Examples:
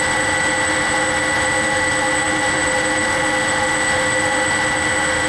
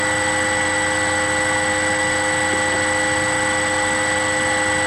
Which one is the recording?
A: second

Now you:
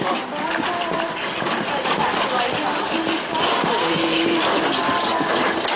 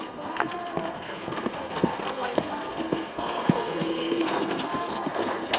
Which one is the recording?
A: first